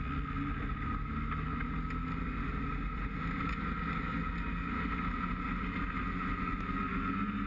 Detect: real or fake real